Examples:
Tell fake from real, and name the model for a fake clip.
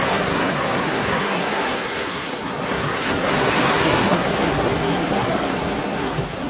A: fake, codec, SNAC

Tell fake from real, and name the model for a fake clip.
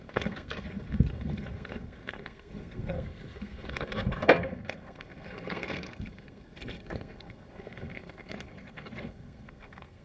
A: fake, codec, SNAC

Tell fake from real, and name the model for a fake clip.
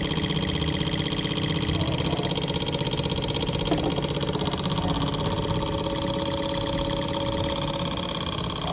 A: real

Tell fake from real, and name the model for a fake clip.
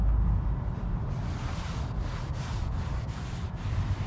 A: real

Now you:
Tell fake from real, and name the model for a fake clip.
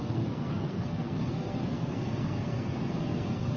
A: fake, codec, SNAC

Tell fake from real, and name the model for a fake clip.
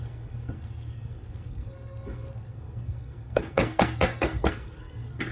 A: fake, codec, SNAC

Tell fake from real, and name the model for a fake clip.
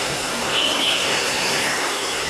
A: fake, codec, SNAC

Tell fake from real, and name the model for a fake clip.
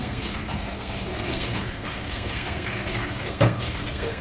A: fake, codec, SNAC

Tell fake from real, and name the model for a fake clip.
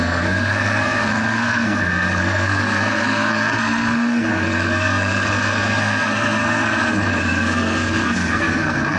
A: fake, codec, SNAC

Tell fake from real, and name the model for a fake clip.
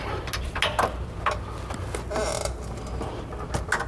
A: real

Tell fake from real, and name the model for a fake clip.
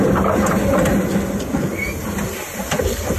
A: real